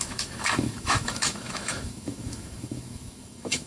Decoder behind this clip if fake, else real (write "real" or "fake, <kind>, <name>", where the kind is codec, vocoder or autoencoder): fake, autoencoder, DAC-VAE